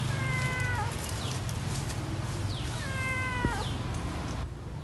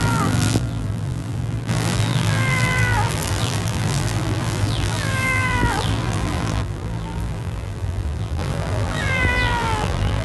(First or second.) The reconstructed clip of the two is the second